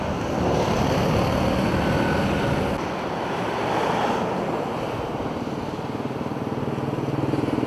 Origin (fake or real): real